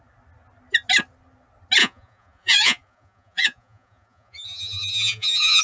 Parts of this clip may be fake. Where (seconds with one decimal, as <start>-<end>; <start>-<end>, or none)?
1.8-5.6